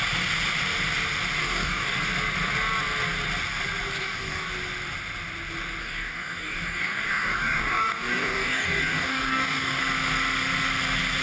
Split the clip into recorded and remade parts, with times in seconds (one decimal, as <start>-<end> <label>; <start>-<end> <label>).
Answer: 0.0-1.4 recorded; 1.4-2.0 remade; 2.0-4.0 recorded; 4.0-4.5 remade; 4.5-5.8 recorded; 5.8-9.8 remade; 9.8-11.2 recorded